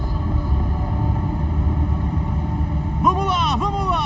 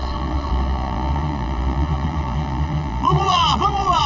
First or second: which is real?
first